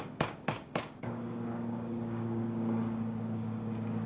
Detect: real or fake fake